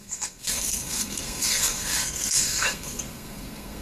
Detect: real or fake fake